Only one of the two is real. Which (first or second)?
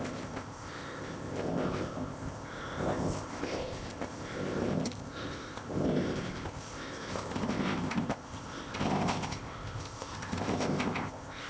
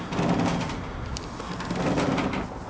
second